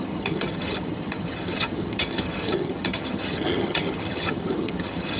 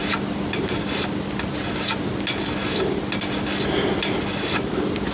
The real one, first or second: second